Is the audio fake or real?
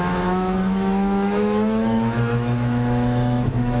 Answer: fake